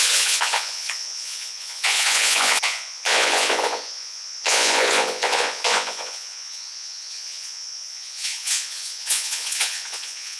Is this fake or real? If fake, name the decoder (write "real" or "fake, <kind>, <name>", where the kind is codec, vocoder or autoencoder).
fake, vocoder, Vocos